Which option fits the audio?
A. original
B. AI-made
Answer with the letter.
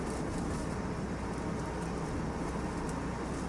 A